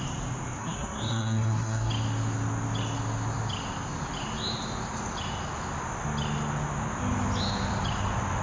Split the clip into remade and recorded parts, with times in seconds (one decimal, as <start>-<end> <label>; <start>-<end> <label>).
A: 0.0-0.6 recorded; 0.6-1.9 remade; 1.9-8.4 recorded